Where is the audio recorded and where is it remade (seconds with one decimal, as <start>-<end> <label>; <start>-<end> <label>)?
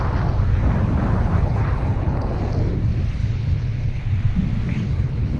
0.0-1.1 recorded; 1.1-2.4 remade; 2.4-3.2 recorded; 3.2-4.0 remade; 4.0-4.7 recorded; 4.7-5.4 remade